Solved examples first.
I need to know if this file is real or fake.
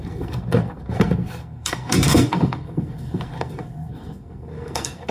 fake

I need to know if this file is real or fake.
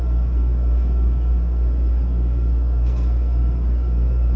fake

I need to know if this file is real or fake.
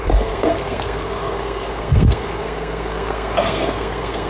fake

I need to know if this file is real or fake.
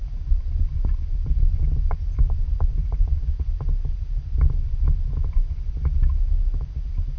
real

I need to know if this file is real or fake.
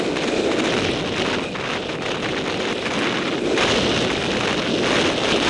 real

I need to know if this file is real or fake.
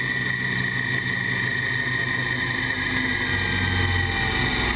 real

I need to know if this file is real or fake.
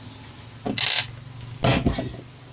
real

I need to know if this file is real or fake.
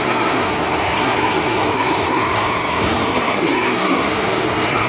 fake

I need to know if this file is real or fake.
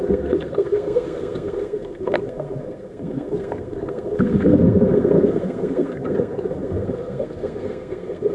fake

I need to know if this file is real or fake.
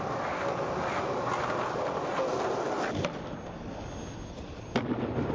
real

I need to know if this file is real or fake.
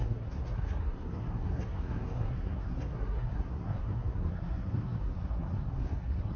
fake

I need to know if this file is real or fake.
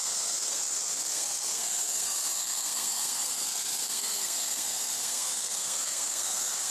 fake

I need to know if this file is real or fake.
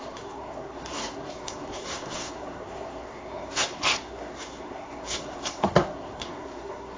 fake